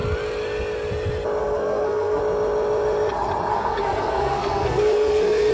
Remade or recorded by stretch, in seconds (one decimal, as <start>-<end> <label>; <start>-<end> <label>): 0.0-1.4 recorded; 1.4-2.2 remade; 2.2-3.5 recorded; 3.5-5.5 remade